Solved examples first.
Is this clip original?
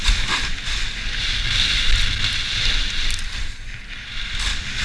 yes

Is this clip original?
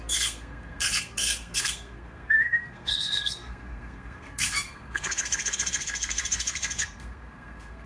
no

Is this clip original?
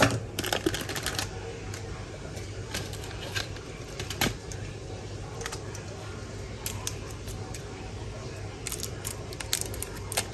yes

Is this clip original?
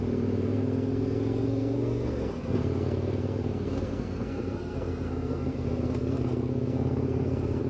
no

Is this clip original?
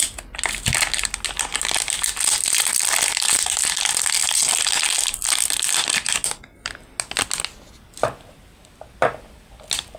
yes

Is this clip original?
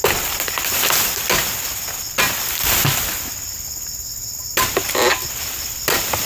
yes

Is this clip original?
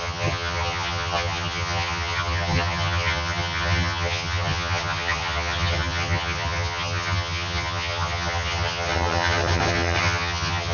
no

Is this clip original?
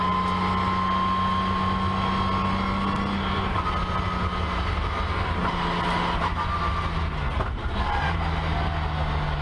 yes